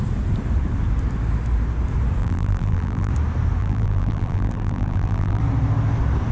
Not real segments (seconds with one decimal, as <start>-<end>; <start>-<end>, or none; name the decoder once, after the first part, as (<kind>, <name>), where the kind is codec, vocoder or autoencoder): 2.2-3.1 (vocoder, BigVGAN v2); 3.6-5.4